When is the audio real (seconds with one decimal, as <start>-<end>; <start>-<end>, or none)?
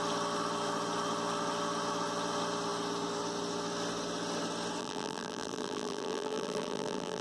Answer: 0.0-4.8